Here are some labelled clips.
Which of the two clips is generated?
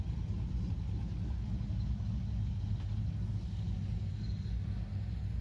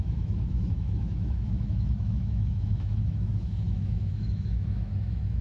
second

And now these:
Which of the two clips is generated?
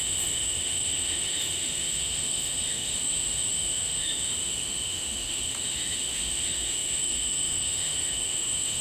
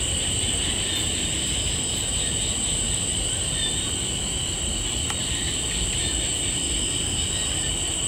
first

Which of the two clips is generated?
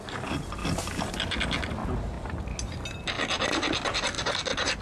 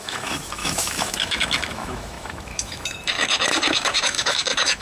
second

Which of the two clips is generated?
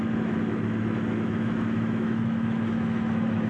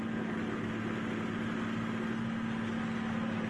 first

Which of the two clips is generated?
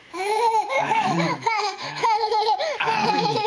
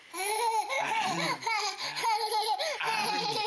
first